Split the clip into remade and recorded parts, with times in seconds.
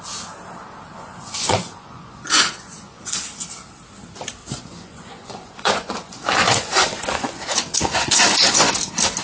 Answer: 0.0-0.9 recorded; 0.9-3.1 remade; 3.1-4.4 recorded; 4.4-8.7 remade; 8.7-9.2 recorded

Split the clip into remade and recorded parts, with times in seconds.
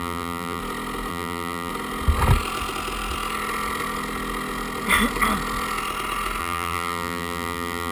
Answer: 0.0-0.6 remade; 0.6-1.1 recorded; 1.1-1.7 remade; 1.7-6.4 recorded; 6.4-7.9 remade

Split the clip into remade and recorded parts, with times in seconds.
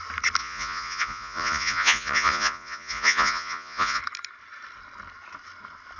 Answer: 0.0-0.4 recorded; 0.4-4.0 remade; 4.0-6.0 recorded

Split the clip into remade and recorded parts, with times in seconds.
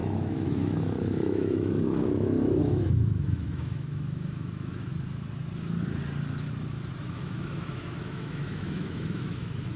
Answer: 0.0-4.9 remade; 4.9-7.0 recorded; 7.0-9.8 remade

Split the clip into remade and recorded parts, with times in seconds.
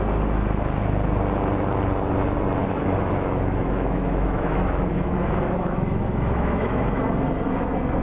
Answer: 0.0-2.6 recorded; 2.6-7.0 remade; 7.0-8.0 recorded